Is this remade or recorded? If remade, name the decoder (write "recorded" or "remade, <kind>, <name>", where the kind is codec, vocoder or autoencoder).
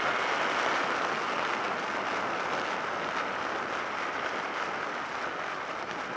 recorded